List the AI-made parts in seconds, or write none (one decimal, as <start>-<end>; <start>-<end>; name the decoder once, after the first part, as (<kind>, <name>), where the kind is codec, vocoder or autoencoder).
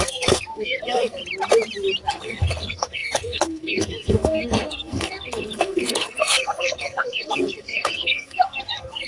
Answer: 0.0-1.2 (codec, SNAC); 2.1-9.1